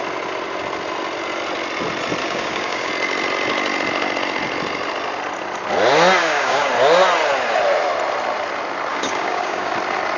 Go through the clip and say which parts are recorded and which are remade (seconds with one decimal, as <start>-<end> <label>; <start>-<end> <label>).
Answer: 0.0-2.2 recorded; 2.2-2.9 remade; 2.9-6.2 recorded; 6.2-6.7 remade; 6.7-8.9 recorded; 8.9-9.7 remade; 9.7-10.2 recorded